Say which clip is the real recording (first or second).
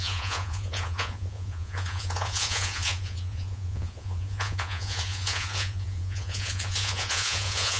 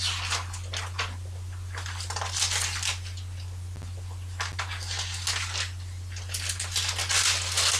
second